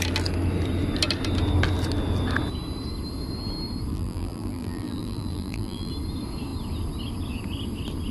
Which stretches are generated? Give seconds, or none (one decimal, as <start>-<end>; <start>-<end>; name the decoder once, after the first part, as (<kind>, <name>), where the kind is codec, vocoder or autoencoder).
3.9-5.9 (vocoder, BigVGAN v2)